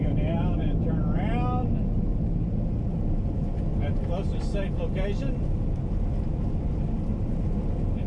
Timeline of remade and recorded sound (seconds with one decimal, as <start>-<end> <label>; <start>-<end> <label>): 0.0-8.1 recorded